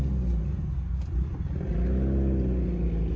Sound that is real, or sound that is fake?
real